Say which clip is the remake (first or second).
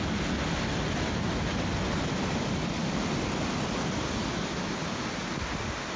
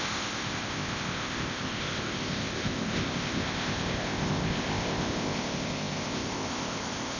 second